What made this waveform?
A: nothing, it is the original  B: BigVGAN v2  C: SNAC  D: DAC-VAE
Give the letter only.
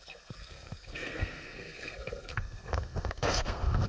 C